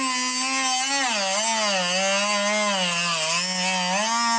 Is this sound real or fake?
real